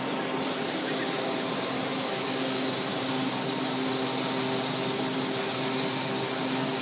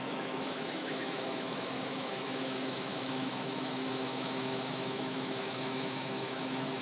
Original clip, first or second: first